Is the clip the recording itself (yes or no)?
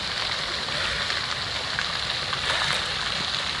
yes